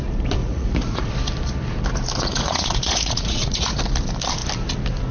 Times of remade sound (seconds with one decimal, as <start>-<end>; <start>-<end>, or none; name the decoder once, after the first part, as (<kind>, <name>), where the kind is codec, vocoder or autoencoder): 0.4-1.1 (vocoder, Vocos); 2.3-3.8

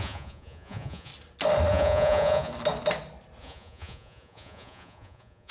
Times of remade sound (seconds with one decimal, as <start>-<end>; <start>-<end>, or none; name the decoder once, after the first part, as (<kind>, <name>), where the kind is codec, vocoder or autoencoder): 0.0-1.1 (vocoder, Vocos); 1.7-2.5; 3.4-5.5

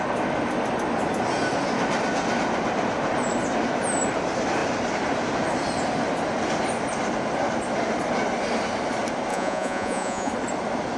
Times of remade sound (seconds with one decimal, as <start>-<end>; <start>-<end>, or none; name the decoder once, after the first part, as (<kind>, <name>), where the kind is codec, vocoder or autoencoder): 9.3-10.3 (vocoder, Vocos)

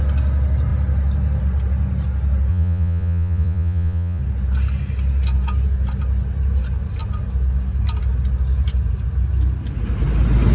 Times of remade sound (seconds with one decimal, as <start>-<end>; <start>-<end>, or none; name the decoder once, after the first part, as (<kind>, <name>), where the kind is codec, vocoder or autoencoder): 2.5-4.2 (vocoder, Vocos)

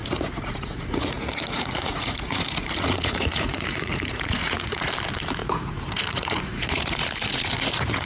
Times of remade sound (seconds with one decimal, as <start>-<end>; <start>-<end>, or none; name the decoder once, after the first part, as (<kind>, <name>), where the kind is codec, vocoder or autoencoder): 0.0-4.9 (vocoder, Vocos); 5.4-8.1

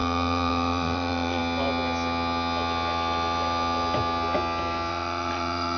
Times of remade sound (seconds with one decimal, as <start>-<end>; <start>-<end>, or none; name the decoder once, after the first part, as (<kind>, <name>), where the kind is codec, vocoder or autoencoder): 0.0-1.4 (vocoder, Vocos); 4.9-5.8

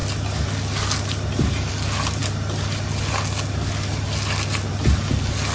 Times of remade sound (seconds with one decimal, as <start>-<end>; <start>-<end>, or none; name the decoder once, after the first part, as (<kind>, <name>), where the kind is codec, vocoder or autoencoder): none